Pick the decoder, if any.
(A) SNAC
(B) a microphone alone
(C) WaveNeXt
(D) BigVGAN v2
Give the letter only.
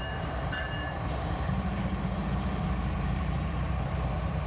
D